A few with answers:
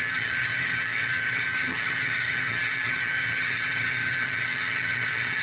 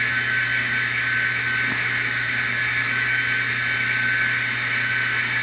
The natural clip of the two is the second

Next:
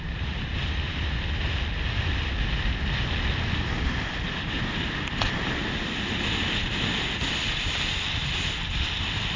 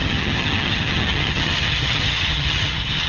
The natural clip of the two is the first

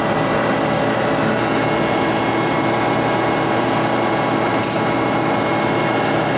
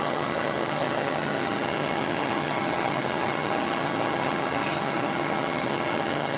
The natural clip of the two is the first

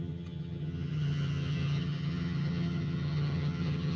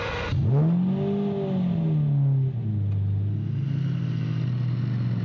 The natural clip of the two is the second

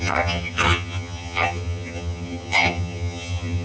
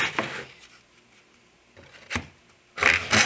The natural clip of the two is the second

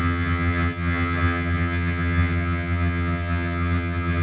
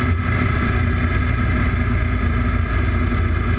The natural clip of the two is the second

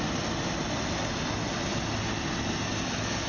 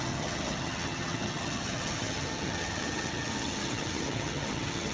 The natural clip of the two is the first